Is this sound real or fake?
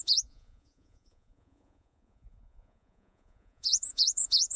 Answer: fake